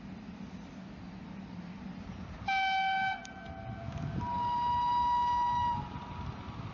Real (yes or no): yes